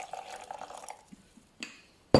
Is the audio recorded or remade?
recorded